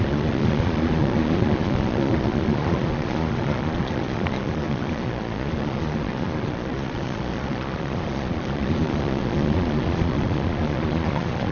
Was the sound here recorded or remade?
remade